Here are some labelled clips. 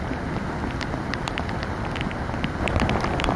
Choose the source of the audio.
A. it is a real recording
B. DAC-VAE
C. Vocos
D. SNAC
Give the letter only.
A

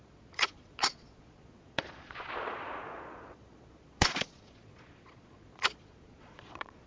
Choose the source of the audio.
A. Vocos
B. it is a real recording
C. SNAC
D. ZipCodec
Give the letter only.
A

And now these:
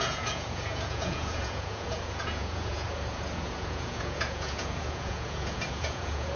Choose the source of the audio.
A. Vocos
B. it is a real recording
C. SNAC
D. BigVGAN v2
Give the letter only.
A